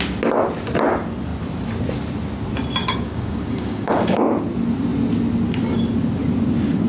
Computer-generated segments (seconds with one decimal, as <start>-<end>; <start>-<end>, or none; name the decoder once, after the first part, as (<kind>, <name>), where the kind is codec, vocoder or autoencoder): 2.8-4.2 (codec, DAC)